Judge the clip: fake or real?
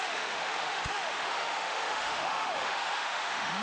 fake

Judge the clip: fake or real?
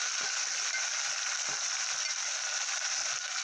real